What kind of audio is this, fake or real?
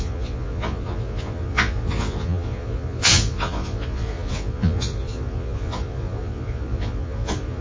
fake